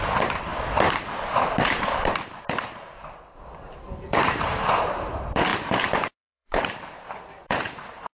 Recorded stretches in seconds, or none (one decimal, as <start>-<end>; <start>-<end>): 0.5-1.6